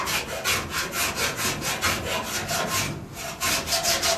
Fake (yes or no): no